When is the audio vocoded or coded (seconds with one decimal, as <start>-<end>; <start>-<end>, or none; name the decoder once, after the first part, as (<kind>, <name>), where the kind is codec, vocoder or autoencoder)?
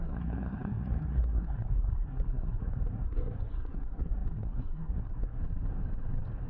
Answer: 0.0-5.4 (codec, SNAC)